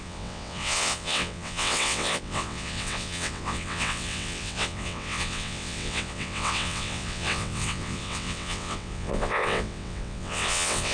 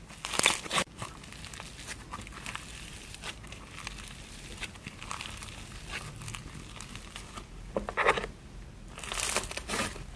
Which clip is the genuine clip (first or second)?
second